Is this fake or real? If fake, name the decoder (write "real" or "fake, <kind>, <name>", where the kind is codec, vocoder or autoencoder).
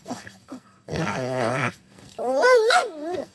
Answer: fake, codec, SNAC